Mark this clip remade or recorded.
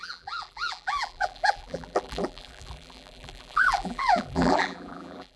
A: remade